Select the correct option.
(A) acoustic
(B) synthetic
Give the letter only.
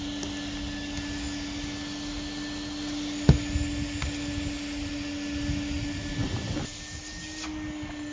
A